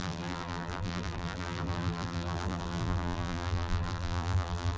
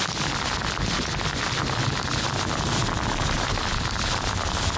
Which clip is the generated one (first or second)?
first